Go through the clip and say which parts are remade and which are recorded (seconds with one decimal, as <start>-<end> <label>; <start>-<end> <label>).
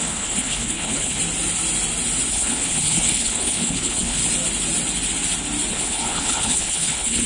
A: 0.0-1.2 remade; 1.2-2.3 recorded; 2.3-4.2 remade; 4.2-5.7 recorded; 5.7-7.3 remade